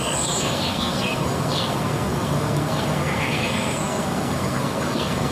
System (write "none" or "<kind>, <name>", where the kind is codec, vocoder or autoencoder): codec, SNAC